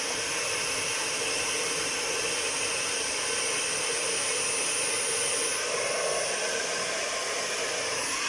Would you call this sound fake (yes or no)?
no